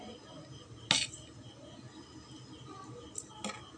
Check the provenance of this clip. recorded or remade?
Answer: recorded